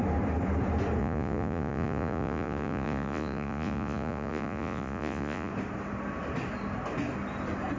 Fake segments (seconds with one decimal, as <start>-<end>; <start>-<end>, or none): 1.0-5.5